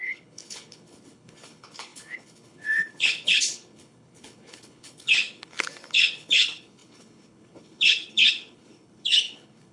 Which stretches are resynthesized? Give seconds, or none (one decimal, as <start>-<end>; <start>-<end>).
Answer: 0.0-9.7